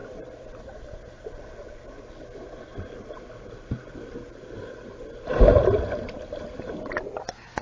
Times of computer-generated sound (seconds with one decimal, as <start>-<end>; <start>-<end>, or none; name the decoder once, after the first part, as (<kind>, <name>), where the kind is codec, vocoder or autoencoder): 0.0-1.0 (vocoder, BigVGAN v2)